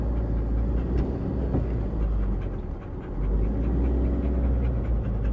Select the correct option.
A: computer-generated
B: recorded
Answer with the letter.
B